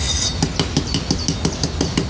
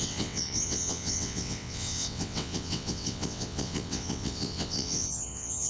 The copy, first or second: second